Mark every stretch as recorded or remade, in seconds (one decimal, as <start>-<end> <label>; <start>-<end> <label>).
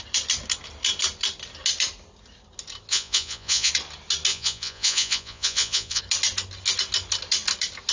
0.0-2.9 recorded; 2.9-3.7 remade; 3.7-4.3 recorded; 4.3-6.0 remade; 6.0-7.9 recorded